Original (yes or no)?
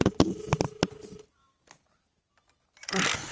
yes